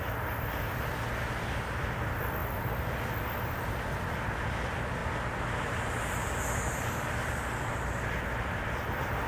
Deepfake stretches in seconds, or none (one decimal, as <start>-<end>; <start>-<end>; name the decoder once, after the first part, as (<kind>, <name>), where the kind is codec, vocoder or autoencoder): none